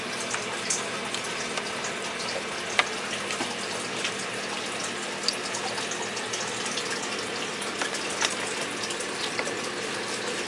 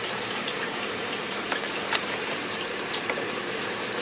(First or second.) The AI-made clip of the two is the second